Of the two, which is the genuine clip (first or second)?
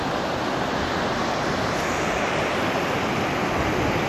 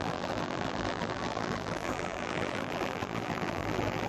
first